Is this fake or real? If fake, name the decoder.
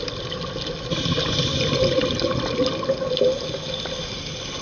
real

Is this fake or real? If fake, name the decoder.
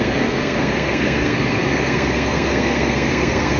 fake, codec, SNAC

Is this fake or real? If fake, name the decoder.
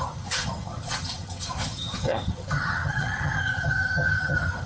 fake, vocoder, HiFi-GAN